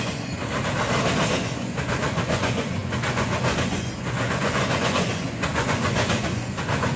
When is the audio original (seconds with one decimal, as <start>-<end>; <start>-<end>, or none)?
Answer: 0.4-1.3